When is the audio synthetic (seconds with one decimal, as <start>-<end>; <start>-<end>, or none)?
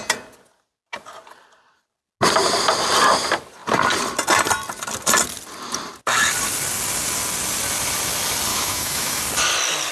8.5-9.2